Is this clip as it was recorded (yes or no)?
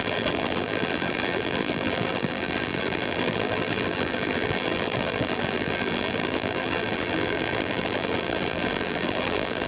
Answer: no